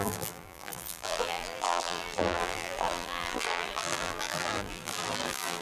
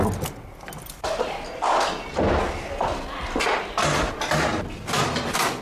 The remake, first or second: first